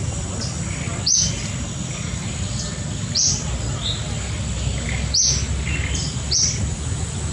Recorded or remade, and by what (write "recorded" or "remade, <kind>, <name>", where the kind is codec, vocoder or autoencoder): recorded